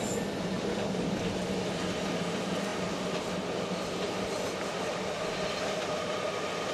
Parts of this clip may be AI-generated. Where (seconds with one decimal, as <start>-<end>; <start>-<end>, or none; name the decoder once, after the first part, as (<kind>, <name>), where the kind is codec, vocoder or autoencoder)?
0.7-1.3 (codec, DAC)